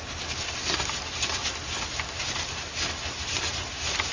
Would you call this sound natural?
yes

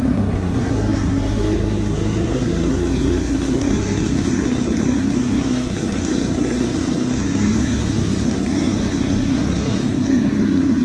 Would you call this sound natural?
no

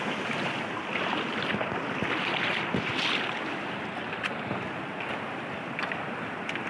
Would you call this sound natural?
yes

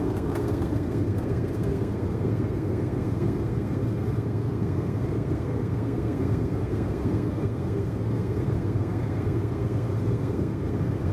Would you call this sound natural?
no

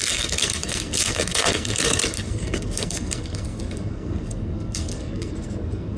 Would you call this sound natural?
no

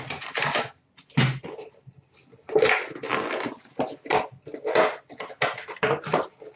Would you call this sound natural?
yes